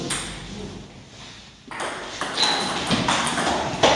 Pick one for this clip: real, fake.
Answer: real